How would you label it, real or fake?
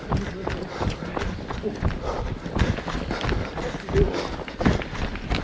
real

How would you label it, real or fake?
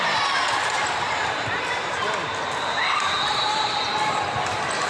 real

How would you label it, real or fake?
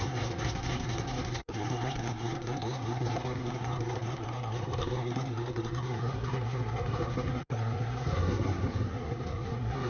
fake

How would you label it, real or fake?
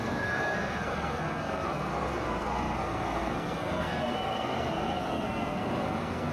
fake